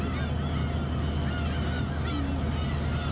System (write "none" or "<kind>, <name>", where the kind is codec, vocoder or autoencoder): none